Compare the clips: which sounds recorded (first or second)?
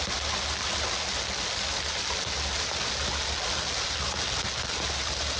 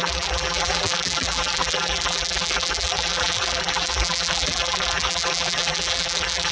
first